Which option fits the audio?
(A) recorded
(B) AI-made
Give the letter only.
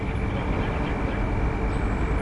A